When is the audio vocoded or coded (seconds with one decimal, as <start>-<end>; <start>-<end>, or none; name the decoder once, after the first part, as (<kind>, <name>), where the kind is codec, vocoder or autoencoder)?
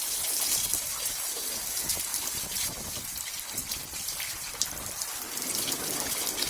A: none